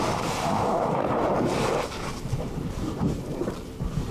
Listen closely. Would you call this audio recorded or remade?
remade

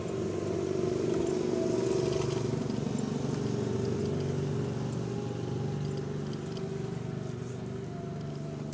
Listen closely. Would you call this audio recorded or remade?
recorded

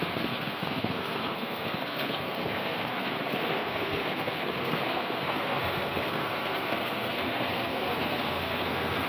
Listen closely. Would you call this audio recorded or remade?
remade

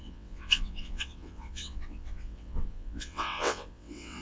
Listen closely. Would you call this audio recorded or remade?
remade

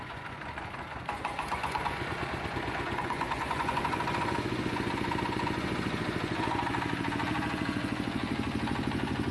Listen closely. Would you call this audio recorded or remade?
remade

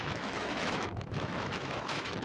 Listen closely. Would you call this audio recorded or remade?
remade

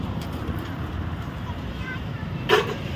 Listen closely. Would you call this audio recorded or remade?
remade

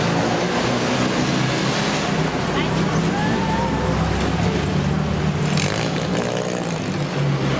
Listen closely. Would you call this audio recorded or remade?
recorded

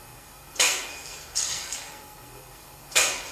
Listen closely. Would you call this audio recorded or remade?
remade